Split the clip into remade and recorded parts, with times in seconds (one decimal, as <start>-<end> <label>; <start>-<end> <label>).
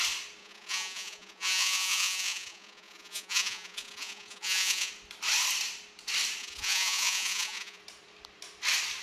0.0-0.4 recorded; 0.4-4.9 remade; 4.9-6.4 recorded; 6.4-7.8 remade; 7.8-9.0 recorded